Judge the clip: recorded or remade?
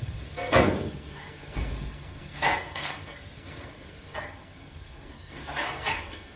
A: remade